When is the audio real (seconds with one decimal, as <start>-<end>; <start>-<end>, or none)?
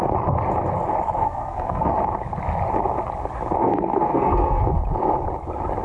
0.0-1.2; 1.9-3.6; 4.6-5.8